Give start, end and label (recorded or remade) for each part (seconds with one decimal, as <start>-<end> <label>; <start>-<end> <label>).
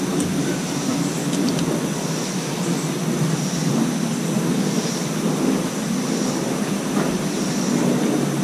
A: 0.0-0.9 recorded; 0.9-5.9 remade; 5.9-8.4 recorded